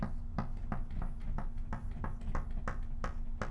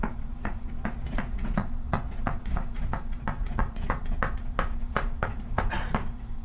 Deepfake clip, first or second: second